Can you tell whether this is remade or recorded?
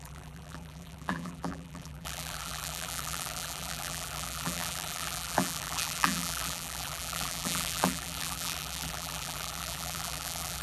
remade